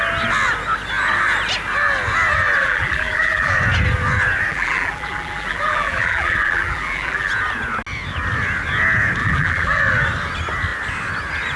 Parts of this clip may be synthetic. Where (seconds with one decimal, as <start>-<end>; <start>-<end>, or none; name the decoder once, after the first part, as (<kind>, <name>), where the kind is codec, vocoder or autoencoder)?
2.6-3.5 (vocoder, BigVGAN v2); 4.5-7.3; 9.2-9.8